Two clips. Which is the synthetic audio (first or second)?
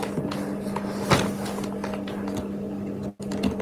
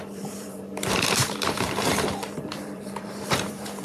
second